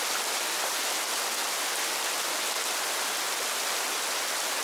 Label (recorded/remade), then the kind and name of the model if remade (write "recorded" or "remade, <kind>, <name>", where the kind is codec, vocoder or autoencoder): recorded